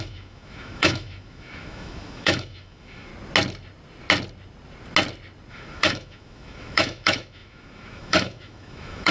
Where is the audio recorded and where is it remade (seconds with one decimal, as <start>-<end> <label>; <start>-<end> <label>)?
0.0-3.1 remade; 3.1-5.5 recorded; 5.5-9.1 remade